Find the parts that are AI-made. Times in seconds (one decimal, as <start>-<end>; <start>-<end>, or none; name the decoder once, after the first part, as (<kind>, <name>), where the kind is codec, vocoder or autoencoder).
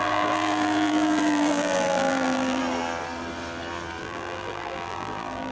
0.0-2.6 (vocoder, BigVGAN v2); 4.0-5.5